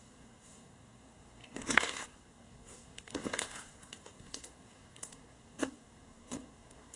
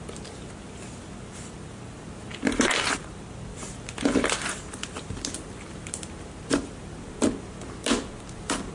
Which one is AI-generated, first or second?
first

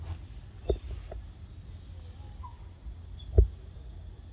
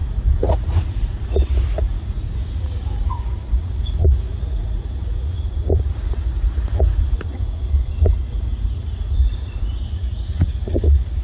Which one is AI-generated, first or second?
second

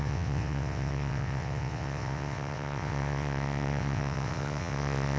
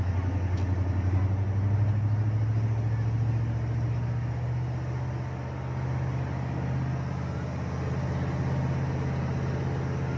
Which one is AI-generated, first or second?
first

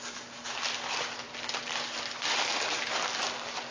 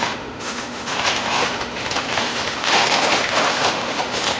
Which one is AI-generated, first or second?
second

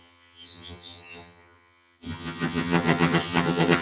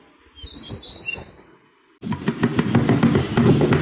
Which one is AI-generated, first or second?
first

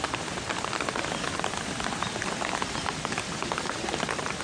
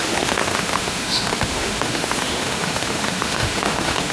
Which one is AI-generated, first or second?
second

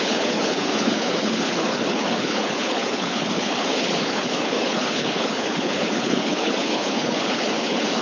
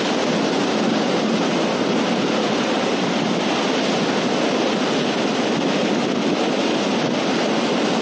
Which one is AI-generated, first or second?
first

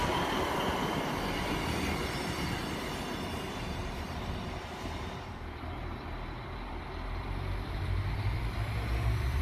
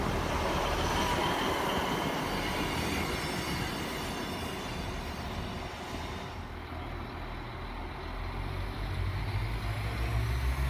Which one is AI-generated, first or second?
first